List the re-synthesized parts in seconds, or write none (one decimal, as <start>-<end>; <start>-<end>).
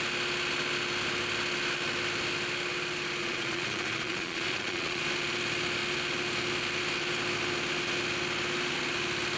3.2-5.0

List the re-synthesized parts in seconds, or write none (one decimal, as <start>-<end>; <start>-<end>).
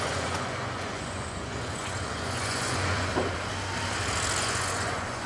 0.0-3.1; 4.4-5.3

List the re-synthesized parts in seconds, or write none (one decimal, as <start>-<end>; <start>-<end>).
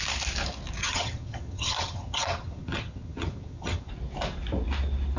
0.8-3.9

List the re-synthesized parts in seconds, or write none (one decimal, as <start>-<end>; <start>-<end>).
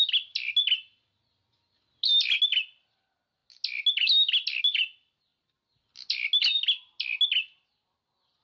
none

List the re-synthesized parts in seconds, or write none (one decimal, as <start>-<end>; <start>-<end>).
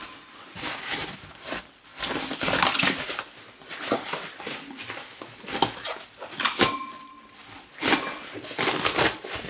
none